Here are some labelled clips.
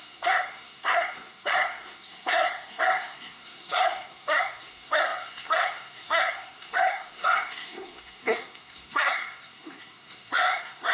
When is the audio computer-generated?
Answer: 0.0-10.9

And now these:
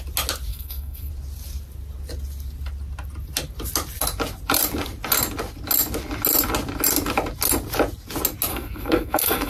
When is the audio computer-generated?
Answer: 0.5-1.1; 8.5-9.5

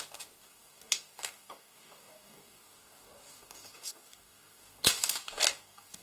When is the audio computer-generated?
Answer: 0.0-6.0

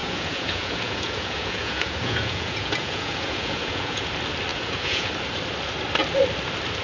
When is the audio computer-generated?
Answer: 0.0-4.1; 4.5-5.1

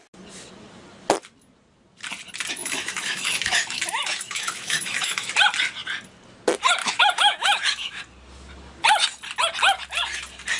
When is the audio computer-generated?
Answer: 2.6-5.3; 6.8-8.0

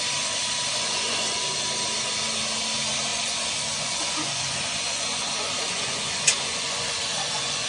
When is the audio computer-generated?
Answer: 0.7-1.4; 3.1-7.7